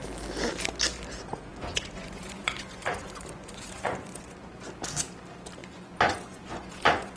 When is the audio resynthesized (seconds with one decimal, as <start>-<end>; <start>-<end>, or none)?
1.5-4.5; 5.6-7.2